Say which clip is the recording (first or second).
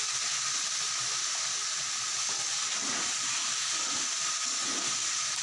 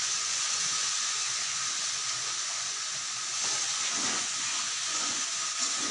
first